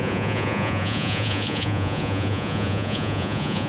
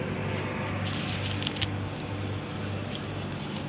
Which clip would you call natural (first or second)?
second